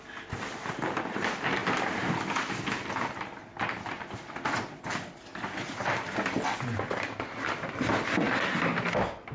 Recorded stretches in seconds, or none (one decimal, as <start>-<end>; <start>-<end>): 0.0-9.3